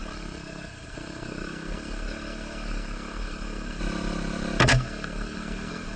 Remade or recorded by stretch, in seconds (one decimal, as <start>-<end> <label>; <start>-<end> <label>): 0.0-3.8 remade; 3.8-4.6 recorded; 4.6-6.0 remade